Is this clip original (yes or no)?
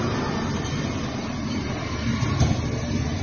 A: yes